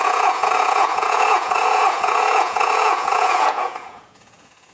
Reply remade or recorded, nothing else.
remade